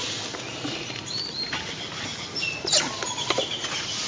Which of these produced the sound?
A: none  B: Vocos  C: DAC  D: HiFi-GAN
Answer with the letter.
A